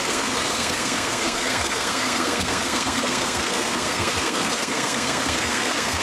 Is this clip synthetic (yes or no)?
yes